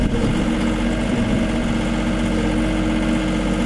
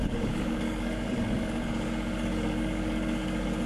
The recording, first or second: first